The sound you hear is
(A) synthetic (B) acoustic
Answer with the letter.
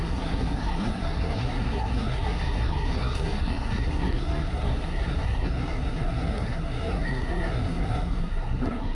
A